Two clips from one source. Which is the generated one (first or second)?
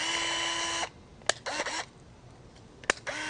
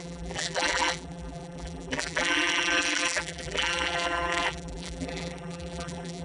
second